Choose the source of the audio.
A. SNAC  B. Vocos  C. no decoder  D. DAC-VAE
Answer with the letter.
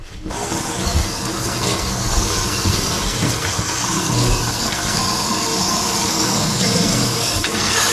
A